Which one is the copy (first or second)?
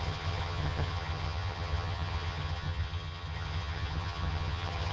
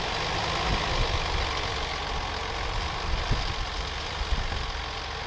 first